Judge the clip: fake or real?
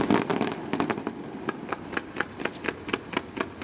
real